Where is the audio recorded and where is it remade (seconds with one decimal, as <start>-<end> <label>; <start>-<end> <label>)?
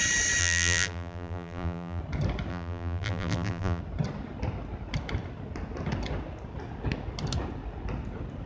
0.0-0.4 recorded; 0.4-2.0 remade; 2.0-2.5 recorded; 2.5-3.8 remade; 3.8-8.5 recorded